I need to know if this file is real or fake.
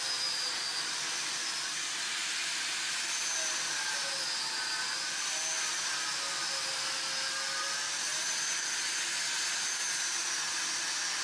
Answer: real